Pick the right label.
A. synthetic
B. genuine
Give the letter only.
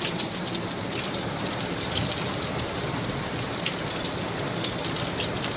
B